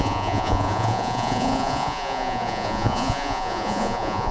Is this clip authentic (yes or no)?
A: no